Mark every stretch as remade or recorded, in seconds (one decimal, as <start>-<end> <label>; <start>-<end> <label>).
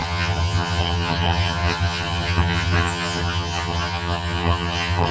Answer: 0.0-5.1 remade